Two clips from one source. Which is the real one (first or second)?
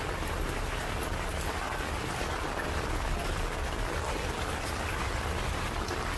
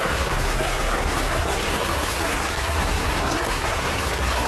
first